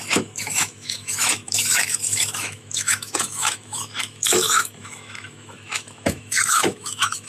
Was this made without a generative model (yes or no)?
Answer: no